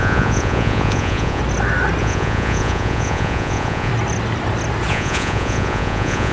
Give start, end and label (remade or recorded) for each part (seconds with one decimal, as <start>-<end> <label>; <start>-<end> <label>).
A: 0.0-1.4 remade; 1.4-2.0 recorded; 2.0-3.9 remade; 3.9-4.9 recorded; 4.9-6.3 remade